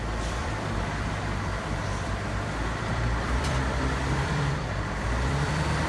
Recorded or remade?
remade